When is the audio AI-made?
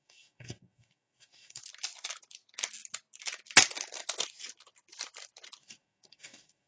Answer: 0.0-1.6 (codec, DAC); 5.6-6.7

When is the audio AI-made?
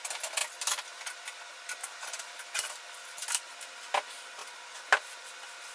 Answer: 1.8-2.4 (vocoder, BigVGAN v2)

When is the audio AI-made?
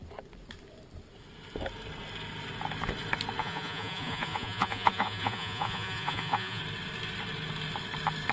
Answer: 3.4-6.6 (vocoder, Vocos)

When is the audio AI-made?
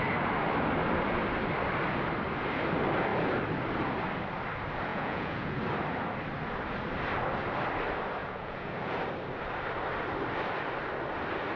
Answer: 4.9-5.6 (vocoder, Vocos); 8.2-9.0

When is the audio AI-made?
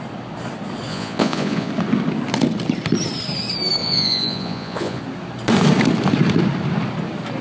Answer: 0.9-1.7 (vocoder, Vocos); 3.8-5.0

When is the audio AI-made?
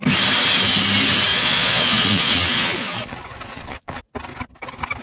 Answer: 1.3-4.0 (vocoder, Vocos)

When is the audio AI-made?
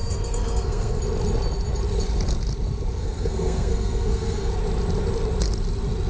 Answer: 0.0-1.0 (codec, SNAC); 3.0-4.5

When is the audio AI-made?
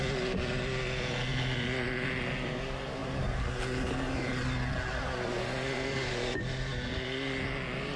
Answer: none